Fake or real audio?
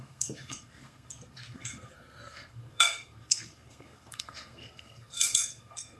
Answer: fake